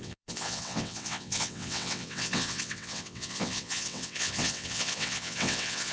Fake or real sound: fake